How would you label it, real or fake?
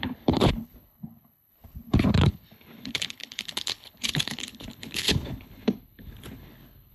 fake